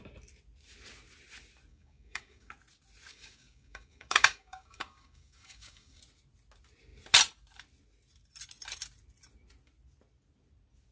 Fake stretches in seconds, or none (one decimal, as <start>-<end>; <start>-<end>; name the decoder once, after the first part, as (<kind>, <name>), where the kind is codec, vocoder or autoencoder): 1.7-2.5 (codec, DAC); 3.1-6.0